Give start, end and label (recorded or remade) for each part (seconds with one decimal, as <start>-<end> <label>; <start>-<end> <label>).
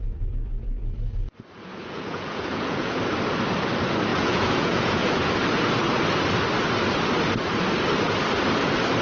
0.0-1.7 recorded; 1.7-3.0 remade; 3.0-4.1 recorded; 4.1-5.3 remade; 5.3-9.0 recorded